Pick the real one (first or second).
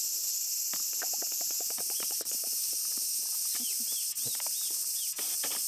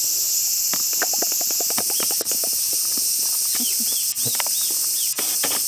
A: second